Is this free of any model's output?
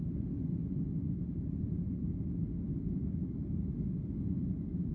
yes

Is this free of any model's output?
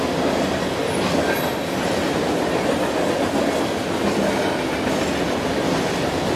yes